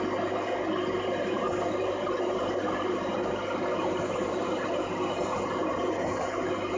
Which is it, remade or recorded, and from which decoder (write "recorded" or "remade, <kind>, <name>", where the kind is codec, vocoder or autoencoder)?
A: recorded